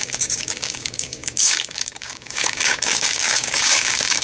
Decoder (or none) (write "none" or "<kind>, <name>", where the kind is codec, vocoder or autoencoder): codec, DAC